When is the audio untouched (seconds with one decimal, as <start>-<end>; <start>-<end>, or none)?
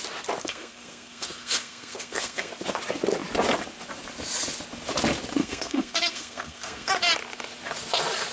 0.0-0.4; 2.5-5.4; 6.9-8.3